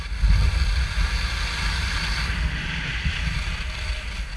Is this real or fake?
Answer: real